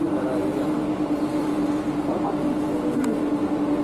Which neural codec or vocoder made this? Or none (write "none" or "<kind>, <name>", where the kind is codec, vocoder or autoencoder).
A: none